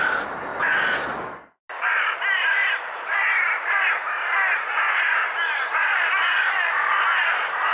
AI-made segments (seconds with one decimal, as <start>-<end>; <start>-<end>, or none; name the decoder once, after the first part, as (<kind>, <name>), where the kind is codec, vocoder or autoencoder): 0.0-0.5 (vocoder, BigVGAN v2); 2.2-2.6; 7.2-7.7